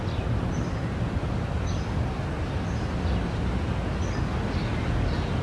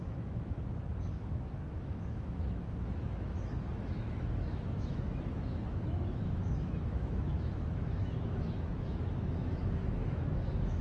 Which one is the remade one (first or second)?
second